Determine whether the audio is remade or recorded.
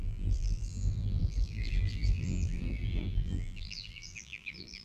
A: remade